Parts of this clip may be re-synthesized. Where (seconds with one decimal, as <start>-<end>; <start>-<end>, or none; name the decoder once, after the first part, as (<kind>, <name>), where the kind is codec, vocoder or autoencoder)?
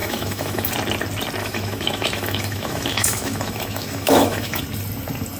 0.0-0.7 (autoencoder, DAC-VAE); 1.4-4.6